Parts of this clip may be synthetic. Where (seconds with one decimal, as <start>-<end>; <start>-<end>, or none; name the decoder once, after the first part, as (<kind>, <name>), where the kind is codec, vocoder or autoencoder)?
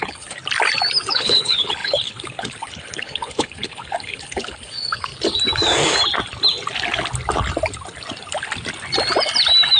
0.0-0.4 (codec, HILCodec); 1.1-5.1